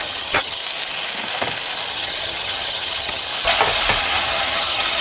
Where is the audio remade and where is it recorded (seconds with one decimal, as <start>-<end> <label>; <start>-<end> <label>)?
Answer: 0.0-0.6 remade; 0.6-1.9 recorded; 1.9-3.3 remade; 3.3-4.0 recorded; 4.0-5.0 remade